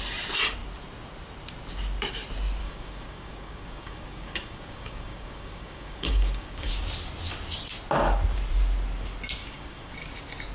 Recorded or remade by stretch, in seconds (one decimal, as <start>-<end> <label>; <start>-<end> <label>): 0.0-2.6 recorded; 2.6-6.7 remade; 6.7-9.4 recorded; 9.4-9.9 remade; 9.9-10.5 recorded